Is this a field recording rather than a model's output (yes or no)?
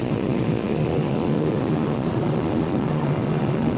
no